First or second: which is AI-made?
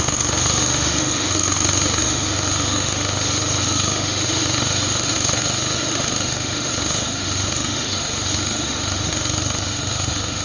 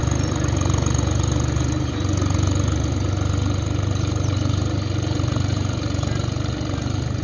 first